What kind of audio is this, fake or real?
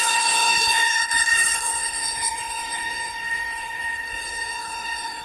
fake